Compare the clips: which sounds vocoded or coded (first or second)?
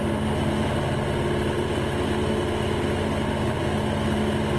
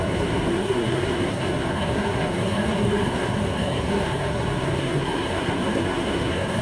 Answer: second